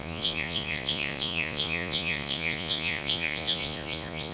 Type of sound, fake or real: fake